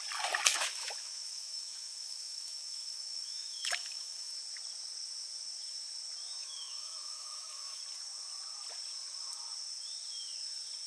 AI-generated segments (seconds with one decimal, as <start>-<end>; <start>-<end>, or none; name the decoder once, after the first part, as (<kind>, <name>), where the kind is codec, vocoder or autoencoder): 0.5-4.3 (autoencoder, DAC-VAE); 6.4-7.8